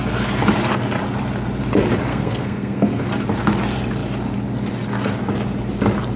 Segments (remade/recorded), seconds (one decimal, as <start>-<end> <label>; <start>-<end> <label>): 0.0-2.1 recorded; 2.1-3.0 remade; 3.0-6.2 recorded